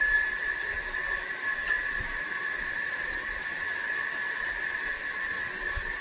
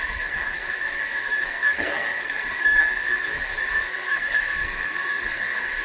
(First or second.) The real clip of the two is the first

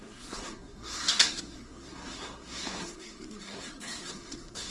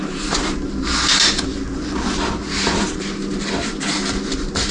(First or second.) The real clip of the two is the second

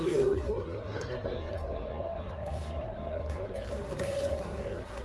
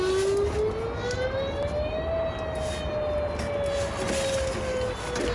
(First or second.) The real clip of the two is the second